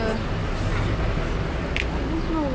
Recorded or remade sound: recorded